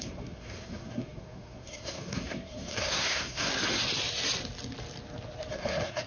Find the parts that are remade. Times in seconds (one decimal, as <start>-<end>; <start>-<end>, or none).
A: 0.0-3.5; 5.5-6.1